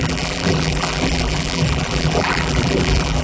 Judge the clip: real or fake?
fake